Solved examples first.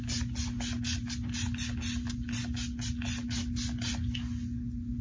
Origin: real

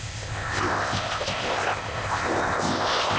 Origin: fake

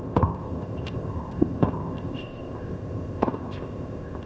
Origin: fake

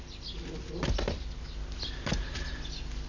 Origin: real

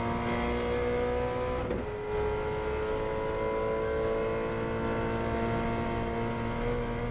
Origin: real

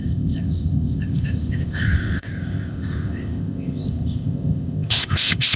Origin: fake